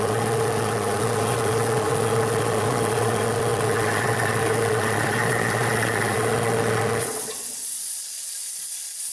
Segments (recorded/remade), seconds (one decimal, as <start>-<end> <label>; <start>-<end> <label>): 0.0-9.1 remade